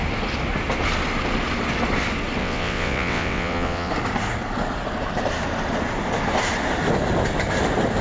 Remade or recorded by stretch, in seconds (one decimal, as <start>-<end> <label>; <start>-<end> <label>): 0.0-2.4 recorded; 2.4-3.9 remade; 3.9-8.0 recorded